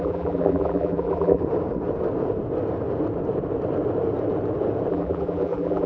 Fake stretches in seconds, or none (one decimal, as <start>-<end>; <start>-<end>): 0.0-1.4; 4.9-5.9